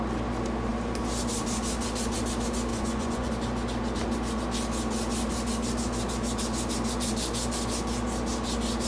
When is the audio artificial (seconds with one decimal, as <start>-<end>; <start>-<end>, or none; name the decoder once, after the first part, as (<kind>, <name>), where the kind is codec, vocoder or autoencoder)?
2.7-3.3 (vocoder, Vocos)